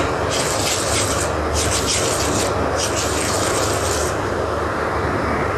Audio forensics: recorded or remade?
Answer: recorded